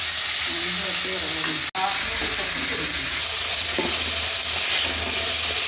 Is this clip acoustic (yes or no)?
yes